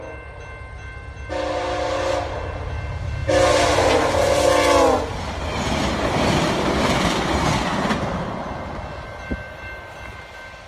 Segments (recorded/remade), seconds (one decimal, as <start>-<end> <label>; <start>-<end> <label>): 0.0-10.7 recorded